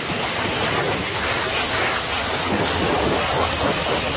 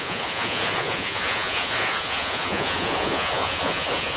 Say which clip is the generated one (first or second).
second